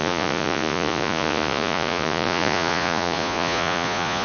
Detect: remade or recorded remade